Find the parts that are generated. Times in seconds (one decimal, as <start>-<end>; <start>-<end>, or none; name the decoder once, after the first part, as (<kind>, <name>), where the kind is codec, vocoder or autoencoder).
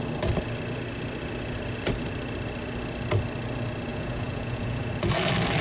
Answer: 3.9-4.9 (vocoder, Vocos)